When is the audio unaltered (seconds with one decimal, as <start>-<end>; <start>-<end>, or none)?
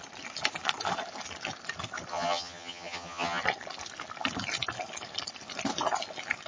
0.0-2.1; 3.4-6.5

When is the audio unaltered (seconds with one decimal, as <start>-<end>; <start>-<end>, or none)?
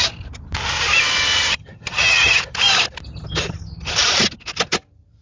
0.0-1.5; 2.4-5.2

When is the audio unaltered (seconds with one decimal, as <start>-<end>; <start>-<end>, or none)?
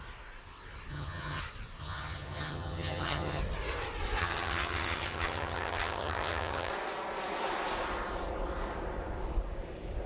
0.0-0.9; 1.4-1.8; 3.4-4.2; 6.7-10.1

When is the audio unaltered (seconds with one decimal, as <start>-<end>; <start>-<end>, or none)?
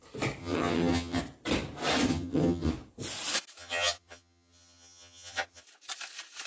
0.0-0.4; 1.2-2.1; 2.7-3.6; 5.6-6.5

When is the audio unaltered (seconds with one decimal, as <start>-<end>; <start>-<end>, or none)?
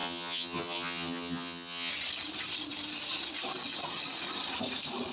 1.9-5.1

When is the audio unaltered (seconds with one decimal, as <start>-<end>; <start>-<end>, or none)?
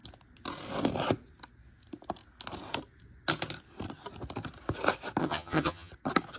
0.0-5.2; 5.9-6.4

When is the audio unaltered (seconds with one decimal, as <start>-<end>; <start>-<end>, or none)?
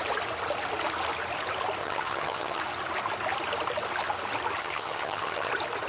0.0-1.8; 2.6-4.6; 5.5-5.9